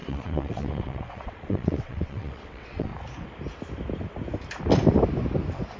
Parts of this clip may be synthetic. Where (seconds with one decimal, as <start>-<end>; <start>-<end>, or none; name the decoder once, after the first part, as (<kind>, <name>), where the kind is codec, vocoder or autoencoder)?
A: 0.0-2.9 (vocoder, WaveNeXt)